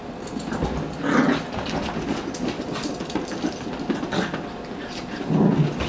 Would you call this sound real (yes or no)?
yes